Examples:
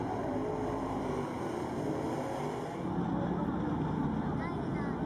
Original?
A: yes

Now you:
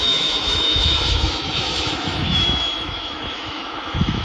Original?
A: no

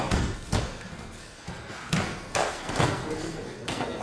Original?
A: no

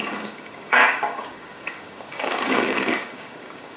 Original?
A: no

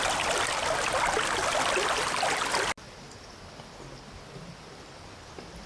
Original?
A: yes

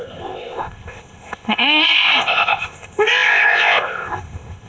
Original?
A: no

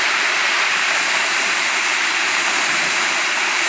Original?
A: no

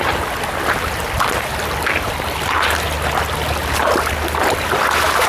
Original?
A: yes